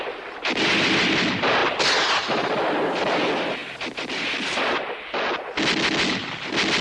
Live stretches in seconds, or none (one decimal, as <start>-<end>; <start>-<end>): 0.0-6.8